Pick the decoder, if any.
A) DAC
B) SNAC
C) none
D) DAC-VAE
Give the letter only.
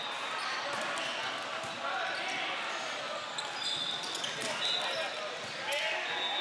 C